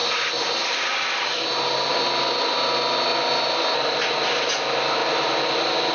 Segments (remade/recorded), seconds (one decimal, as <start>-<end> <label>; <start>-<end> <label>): 0.0-5.0 recorded; 5.0-5.9 remade